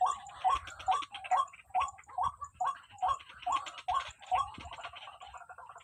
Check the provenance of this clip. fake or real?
real